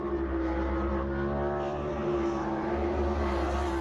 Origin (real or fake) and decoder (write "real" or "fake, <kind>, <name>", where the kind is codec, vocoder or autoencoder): real